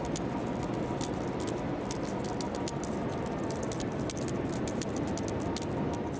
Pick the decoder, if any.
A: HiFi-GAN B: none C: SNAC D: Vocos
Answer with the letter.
B